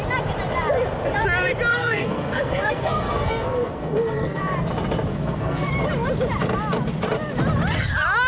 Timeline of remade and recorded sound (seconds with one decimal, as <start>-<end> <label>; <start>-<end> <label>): 0.0-1.7 recorded; 1.7-4.4 remade; 4.4-5.1 recorded; 5.1-5.7 remade; 5.7-8.3 recorded